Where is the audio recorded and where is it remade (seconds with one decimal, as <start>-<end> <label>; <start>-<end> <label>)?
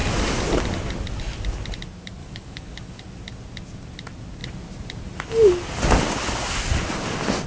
0.0-2.2 recorded; 2.2-3.0 remade; 3.0-7.5 recorded